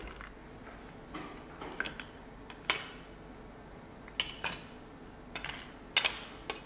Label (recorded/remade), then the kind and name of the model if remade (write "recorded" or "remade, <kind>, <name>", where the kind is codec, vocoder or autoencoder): recorded